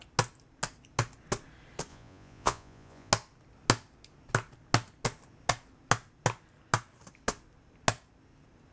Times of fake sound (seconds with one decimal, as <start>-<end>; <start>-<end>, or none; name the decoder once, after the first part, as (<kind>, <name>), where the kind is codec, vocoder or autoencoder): 1.9-3.1 (vocoder, Vocos)